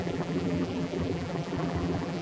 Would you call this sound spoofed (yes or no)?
yes